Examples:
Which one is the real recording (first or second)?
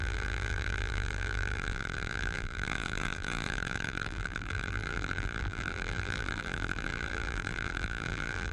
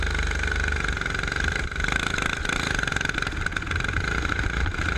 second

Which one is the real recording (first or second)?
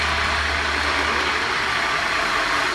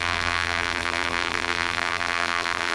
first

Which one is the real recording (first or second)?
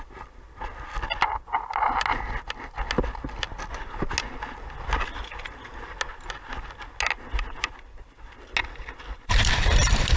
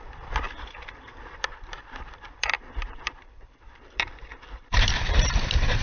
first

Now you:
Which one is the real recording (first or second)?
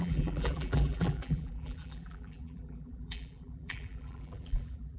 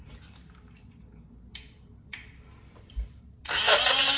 second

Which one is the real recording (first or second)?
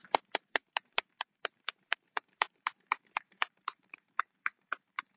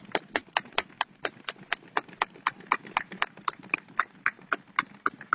second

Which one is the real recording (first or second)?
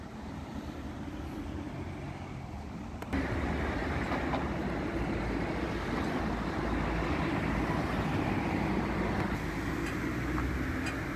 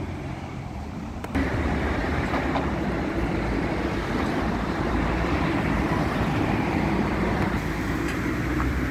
first